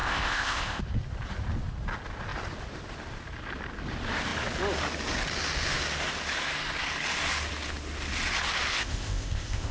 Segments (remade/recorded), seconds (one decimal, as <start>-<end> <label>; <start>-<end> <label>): 0.0-0.8 remade; 0.8-8.7 recorded; 8.7-9.7 remade